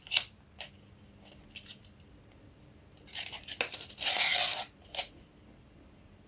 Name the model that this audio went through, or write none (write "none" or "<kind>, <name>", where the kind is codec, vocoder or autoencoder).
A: none